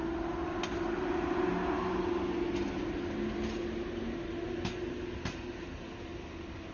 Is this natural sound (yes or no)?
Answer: yes